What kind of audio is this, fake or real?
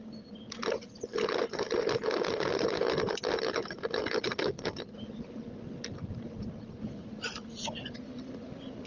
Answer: real